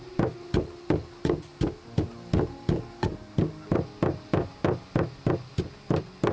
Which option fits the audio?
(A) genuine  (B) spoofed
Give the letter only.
A